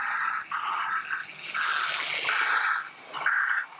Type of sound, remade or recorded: recorded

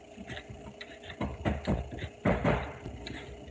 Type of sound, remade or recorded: remade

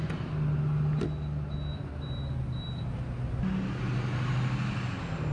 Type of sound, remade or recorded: recorded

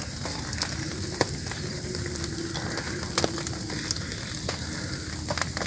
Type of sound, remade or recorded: recorded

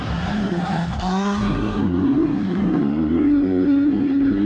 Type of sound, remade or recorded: remade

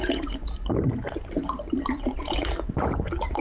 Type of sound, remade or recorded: remade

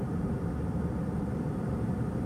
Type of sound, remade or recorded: remade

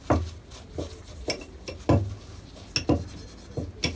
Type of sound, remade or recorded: recorded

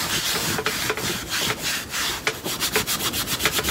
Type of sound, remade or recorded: recorded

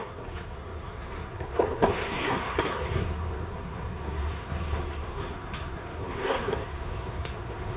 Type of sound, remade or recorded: remade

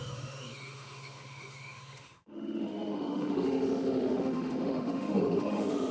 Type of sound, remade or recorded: remade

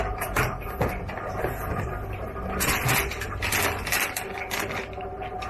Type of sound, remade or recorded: recorded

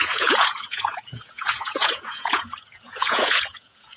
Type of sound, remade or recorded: remade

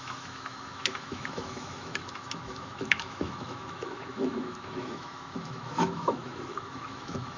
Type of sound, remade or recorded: remade